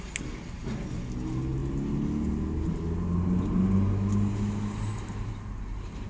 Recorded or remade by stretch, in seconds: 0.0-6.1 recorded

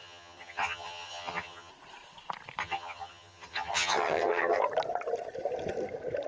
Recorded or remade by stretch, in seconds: 0.0-1.7 remade; 1.7-2.6 recorded; 2.6-4.6 remade; 4.6-6.3 recorded

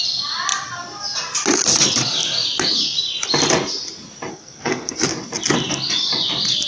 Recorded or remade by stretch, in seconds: 0.0-4.3 recorded; 4.3-5.0 remade; 5.0-6.7 recorded

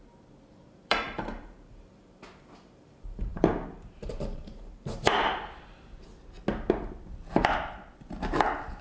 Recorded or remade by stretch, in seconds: 0.0-0.5 recorded; 0.5-5.0 remade; 5.0-8.8 recorded

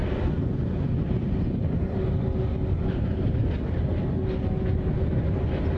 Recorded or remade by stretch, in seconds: 0.0-5.8 recorded

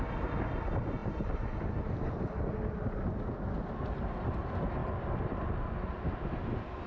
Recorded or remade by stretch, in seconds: 0.0-6.9 recorded